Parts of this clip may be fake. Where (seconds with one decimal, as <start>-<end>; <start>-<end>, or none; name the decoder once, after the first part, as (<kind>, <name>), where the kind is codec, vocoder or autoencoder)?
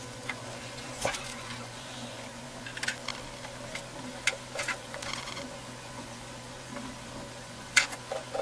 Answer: 0.0-2.7 (vocoder, Vocos); 4.8-6.7; 7.3-8.4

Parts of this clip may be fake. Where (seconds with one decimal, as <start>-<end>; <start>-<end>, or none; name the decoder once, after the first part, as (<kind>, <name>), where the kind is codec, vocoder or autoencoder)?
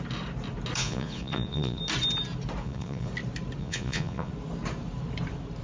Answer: 0.8-1.8 (vocoder, Vocos); 2.6-3.1; 3.6-4.3